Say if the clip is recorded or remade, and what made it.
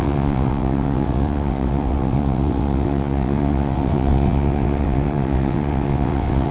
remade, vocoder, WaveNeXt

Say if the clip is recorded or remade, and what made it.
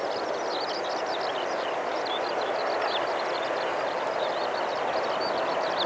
recorded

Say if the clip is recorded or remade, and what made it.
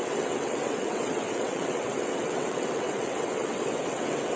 remade, vocoder, WaveNeXt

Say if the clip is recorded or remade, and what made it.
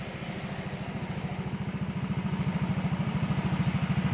recorded